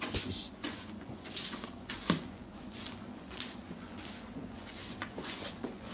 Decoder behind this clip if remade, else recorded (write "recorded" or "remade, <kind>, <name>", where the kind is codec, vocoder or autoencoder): remade, vocoder, Vocos